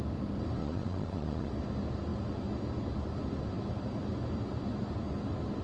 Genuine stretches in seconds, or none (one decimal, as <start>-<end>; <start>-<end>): 0.0-0.6; 1.5-5.6